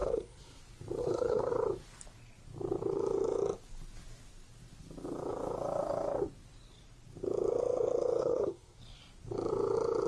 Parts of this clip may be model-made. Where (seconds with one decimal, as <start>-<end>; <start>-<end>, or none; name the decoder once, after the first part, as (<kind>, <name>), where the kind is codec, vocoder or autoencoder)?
0.0-0.6 (codec, SNAC); 1.0-1.5; 8.2-8.8